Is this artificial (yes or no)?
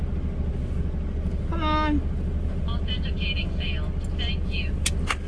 no